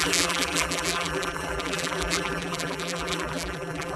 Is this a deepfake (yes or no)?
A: yes